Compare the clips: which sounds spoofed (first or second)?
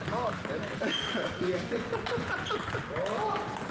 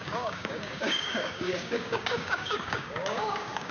second